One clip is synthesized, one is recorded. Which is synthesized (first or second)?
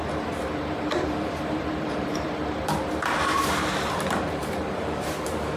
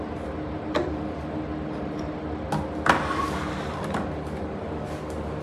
first